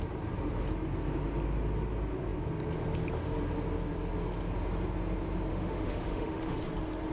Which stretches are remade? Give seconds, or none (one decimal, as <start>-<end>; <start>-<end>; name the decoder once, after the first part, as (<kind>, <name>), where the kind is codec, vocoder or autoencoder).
5.5-6.6 (autoencoder, DAC-VAE)